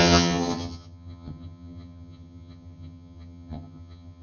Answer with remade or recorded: remade